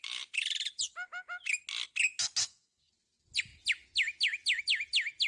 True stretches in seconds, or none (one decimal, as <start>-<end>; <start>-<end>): 0.0-2.4; 2.9-5.3